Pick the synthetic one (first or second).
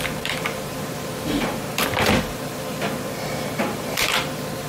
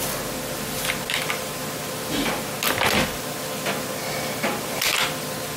first